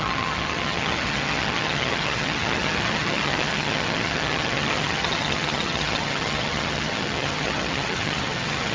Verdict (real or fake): fake